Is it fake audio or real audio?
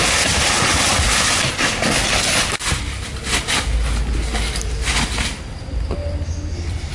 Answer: real